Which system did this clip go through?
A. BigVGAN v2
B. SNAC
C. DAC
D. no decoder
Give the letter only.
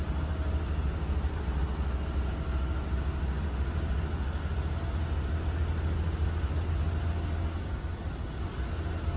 D